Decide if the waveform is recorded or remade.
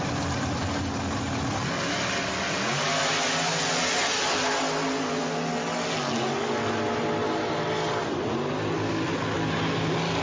recorded